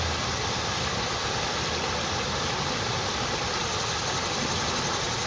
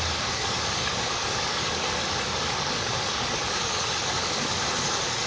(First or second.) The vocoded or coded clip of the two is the second